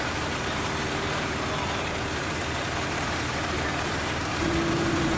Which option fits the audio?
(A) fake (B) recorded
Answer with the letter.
A